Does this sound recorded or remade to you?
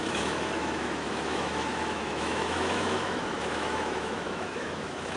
remade